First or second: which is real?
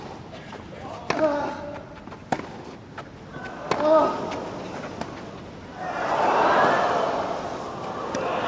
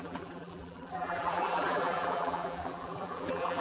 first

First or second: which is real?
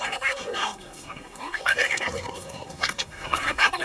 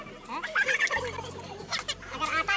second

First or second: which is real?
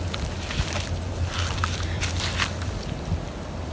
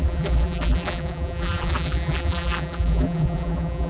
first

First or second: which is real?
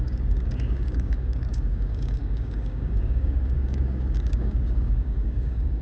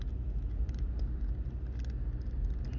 second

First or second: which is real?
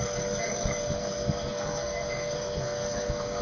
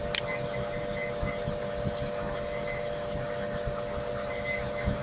second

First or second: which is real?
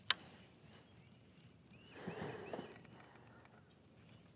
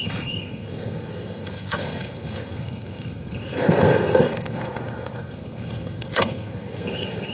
first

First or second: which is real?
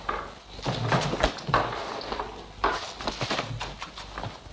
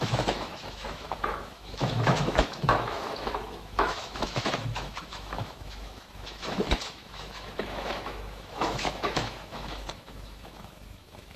first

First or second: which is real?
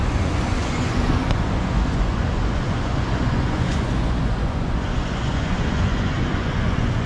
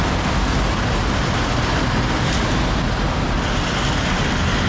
second